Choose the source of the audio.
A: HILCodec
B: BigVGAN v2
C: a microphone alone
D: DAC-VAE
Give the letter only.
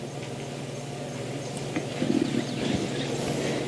C